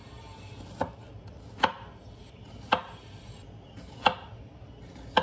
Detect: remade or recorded recorded